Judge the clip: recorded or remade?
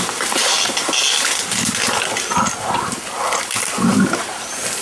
recorded